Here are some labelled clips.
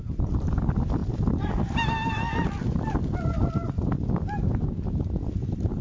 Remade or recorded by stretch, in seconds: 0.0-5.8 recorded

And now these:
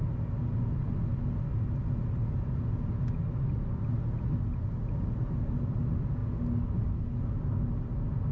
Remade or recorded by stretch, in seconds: 0.0-8.3 recorded

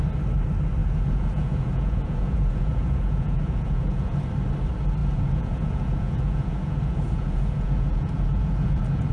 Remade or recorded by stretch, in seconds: 0.0-0.8 recorded; 0.8-4.2 remade; 4.2-5.0 recorded; 5.0-9.1 remade